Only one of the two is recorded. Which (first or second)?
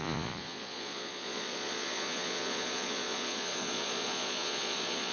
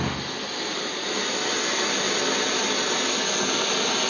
second